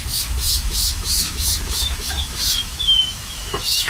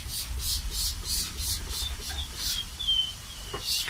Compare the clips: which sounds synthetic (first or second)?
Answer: first